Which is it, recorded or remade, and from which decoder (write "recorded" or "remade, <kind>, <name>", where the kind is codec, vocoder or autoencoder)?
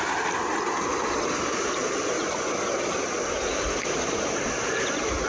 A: recorded